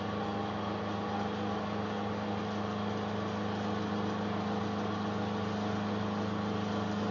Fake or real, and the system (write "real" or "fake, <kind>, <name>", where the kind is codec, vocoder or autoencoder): real